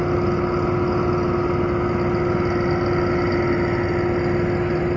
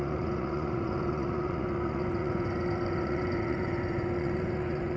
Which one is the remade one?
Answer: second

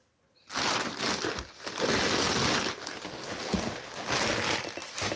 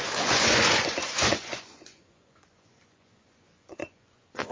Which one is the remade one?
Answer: second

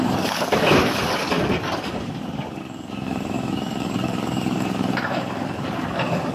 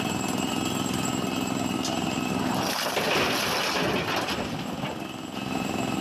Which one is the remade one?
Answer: first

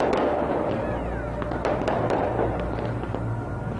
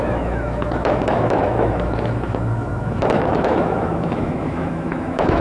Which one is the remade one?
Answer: second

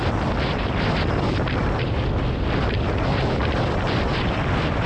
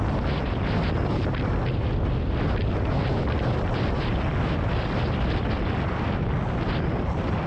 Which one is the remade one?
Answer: first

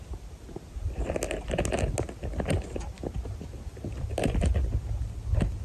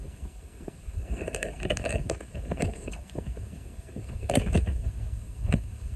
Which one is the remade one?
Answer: second